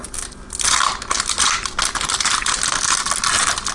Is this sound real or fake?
real